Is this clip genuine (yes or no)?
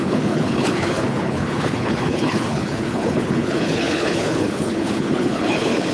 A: no